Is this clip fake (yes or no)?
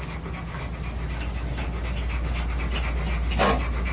no